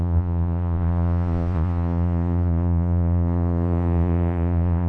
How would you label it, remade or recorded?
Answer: remade